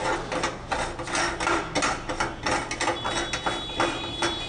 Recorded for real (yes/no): yes